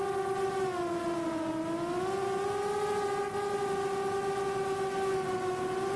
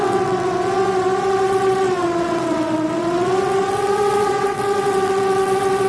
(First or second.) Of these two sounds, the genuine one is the first